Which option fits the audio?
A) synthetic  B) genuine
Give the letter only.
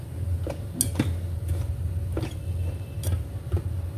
B